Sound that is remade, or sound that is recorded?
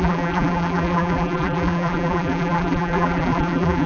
remade